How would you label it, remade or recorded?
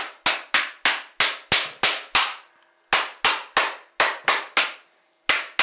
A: recorded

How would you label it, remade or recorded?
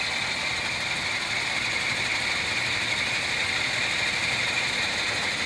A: recorded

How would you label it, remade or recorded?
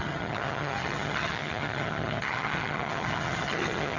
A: remade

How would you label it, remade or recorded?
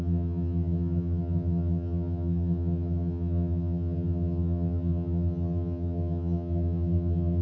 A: remade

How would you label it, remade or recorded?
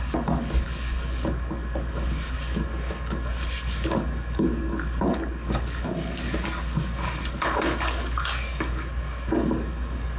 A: remade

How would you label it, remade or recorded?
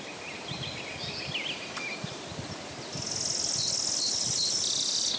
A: recorded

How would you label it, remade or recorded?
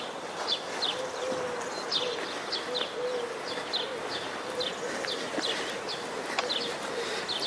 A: recorded